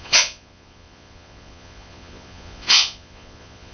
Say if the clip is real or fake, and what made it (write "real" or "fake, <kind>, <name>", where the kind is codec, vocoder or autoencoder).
fake, vocoder, Vocos